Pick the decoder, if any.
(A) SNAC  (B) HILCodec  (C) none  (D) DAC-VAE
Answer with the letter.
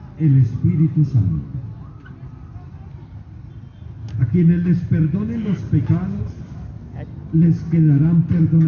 C